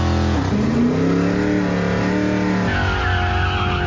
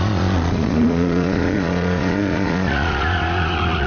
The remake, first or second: second